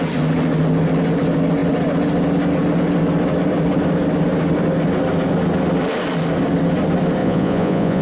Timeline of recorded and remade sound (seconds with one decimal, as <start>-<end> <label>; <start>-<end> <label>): 0.0-7.2 recorded; 7.2-8.0 remade